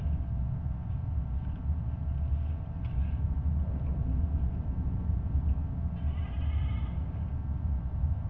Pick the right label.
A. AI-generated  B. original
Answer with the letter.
B